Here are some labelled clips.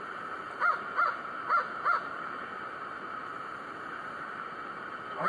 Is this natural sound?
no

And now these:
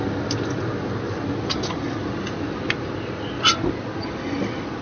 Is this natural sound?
yes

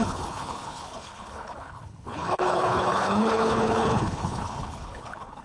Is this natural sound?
no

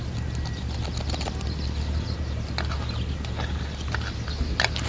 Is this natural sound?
yes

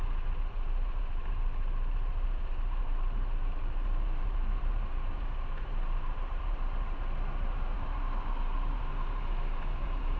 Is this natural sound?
no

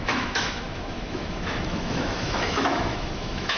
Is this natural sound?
no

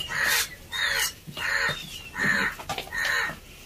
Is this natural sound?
yes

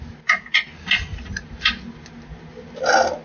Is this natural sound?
yes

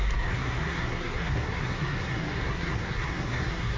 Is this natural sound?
no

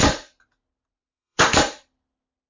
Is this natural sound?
no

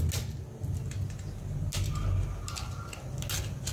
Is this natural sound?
yes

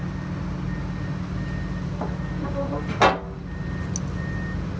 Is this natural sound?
yes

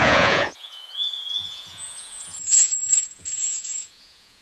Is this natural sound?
no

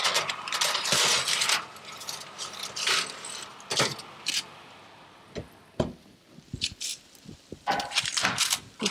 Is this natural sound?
yes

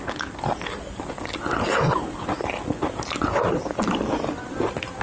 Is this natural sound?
yes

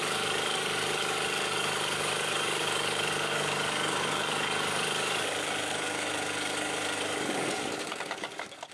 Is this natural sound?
no